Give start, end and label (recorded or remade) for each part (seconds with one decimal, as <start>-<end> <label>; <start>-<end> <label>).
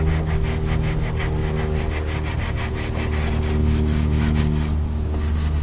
0.0-3.6 recorded; 3.6-4.4 remade; 4.4-5.6 recorded